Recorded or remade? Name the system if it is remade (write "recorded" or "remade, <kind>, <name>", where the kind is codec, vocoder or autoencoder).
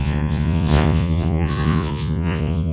remade, vocoder, Vocos